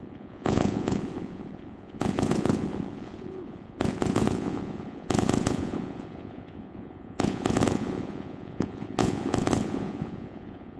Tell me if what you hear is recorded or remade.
remade